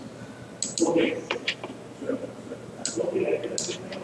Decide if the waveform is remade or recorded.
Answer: recorded